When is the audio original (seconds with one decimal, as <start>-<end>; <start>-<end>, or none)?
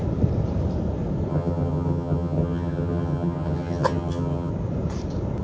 0.0-1.3; 4.5-5.4